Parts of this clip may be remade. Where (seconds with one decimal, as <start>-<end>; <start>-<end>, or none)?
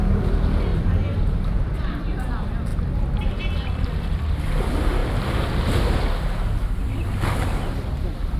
0.7-2.3